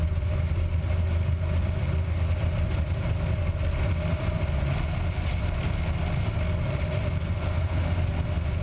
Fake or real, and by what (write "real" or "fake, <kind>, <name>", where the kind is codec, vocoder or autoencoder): real